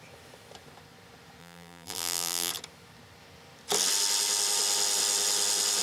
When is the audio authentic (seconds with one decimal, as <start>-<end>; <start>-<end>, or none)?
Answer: 0.0-1.4; 2.5-5.8